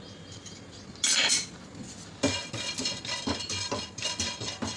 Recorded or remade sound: recorded